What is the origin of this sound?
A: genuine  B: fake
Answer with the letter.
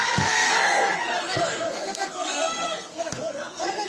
B